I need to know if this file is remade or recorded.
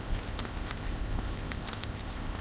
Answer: remade